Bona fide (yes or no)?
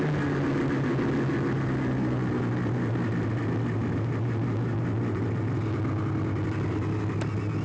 yes